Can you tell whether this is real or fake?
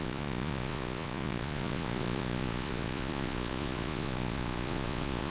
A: fake